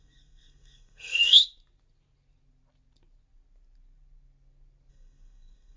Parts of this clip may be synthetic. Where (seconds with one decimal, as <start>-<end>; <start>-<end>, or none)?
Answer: 0.0-1.4; 4.9-5.8